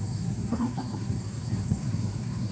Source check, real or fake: fake